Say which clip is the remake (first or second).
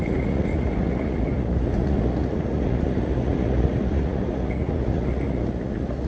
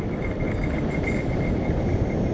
first